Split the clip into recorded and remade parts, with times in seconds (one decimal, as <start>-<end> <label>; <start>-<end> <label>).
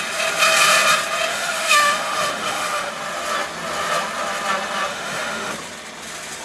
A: 0.0-1.3 recorded; 1.3-2.9 remade; 2.9-4.9 recorded; 4.9-5.5 remade; 5.5-6.4 recorded